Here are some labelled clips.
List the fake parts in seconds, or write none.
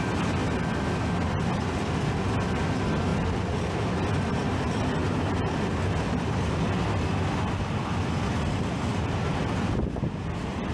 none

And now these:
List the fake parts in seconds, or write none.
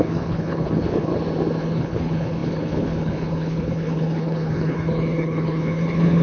0.0-1.1 (codec, HILCodec); 1.6-6.2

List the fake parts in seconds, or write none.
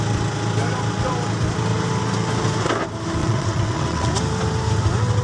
3.2-4.1 (vocoder, WaveNeXt)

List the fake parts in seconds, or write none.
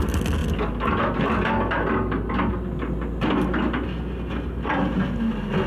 none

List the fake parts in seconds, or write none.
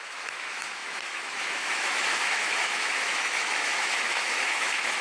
0.0-5.0 (autoencoder, DAC-VAE)